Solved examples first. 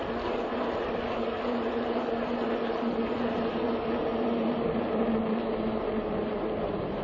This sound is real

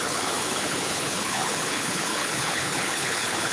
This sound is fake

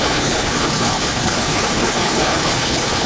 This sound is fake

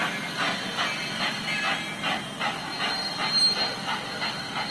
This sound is real